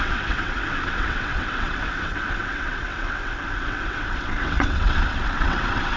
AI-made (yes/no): yes